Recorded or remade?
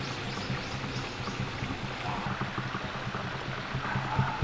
recorded